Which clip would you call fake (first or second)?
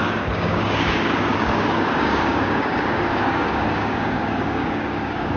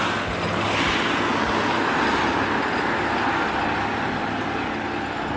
first